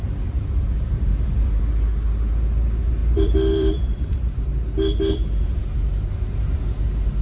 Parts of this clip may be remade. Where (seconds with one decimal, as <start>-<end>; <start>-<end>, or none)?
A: 0.0-1.6; 3.0-4.2